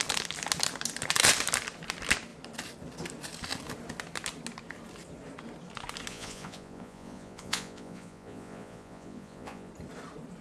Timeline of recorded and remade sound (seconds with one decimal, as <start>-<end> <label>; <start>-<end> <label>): 0.0-6.1 recorded; 6.1-9.7 remade; 9.7-10.4 recorded